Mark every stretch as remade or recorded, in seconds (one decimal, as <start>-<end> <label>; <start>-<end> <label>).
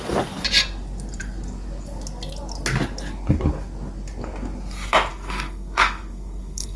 0.0-5.1 recorded; 5.1-6.8 remade